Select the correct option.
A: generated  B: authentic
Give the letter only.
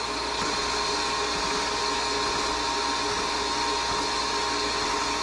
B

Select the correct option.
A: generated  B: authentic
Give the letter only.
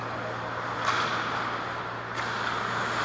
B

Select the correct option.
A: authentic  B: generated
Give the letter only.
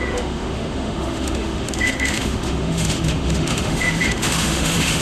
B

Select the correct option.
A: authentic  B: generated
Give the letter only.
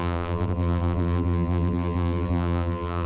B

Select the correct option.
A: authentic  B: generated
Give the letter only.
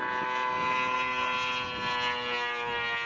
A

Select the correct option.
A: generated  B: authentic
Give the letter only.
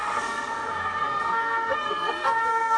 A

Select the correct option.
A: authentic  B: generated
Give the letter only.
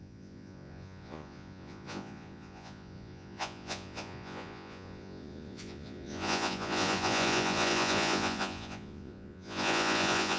B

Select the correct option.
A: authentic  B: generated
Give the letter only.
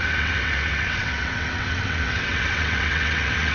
B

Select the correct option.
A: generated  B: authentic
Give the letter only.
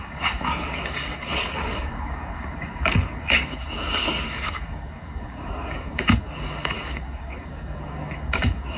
A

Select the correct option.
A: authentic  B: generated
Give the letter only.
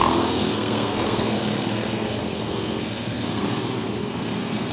B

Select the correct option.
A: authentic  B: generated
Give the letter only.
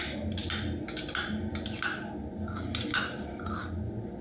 A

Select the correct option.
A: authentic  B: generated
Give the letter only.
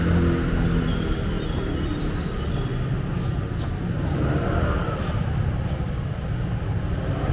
A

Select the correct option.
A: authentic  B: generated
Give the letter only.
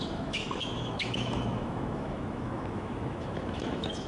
B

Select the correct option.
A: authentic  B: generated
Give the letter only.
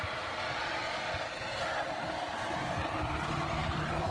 A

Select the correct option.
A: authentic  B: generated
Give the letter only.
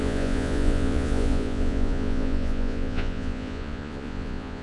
B